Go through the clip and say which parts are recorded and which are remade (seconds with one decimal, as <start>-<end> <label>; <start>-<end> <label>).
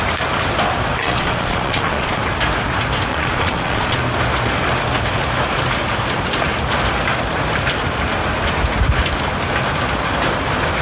0.0-1.0 recorded; 1.0-2.2 remade; 2.2-3.1 recorded; 3.1-4.0 remade; 4.0-10.8 recorded